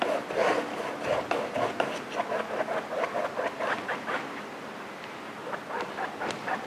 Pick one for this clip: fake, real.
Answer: real